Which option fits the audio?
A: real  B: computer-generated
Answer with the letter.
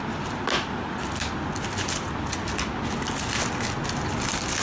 A